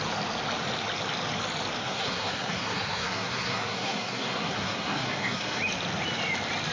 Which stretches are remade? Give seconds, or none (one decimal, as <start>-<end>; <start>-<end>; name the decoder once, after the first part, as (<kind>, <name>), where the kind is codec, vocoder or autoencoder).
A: 1.8-5.6 (codec, SNAC)